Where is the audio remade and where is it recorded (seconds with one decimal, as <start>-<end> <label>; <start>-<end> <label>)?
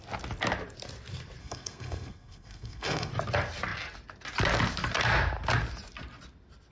0.0-1.4 recorded; 1.4-3.1 remade; 3.1-6.7 recorded